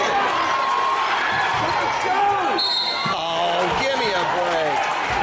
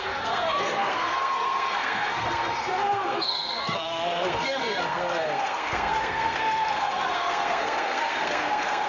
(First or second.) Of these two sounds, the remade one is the second